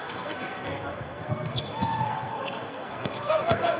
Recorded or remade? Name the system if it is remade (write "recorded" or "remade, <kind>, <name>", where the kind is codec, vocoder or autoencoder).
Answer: remade, codec, SNAC